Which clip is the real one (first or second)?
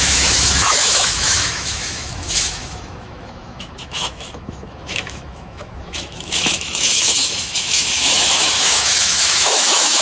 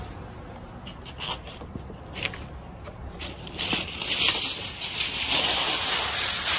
second